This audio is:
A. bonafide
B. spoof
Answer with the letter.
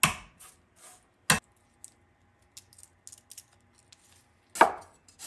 A